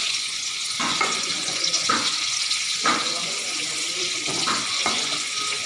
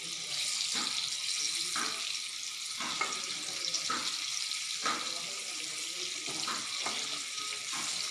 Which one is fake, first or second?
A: first